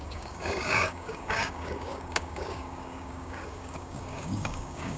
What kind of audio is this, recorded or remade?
remade